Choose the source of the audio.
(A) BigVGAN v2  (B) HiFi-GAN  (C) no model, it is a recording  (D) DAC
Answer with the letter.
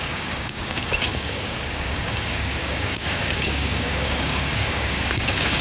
D